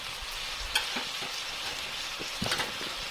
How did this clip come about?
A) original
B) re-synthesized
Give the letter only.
A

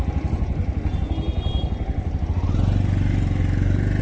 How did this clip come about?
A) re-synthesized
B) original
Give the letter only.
B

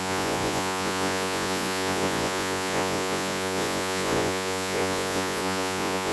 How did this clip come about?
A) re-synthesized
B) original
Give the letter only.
A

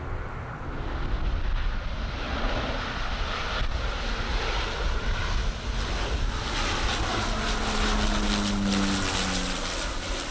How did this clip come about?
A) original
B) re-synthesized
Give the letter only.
A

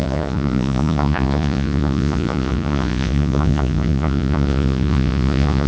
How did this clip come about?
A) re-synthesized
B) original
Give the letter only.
A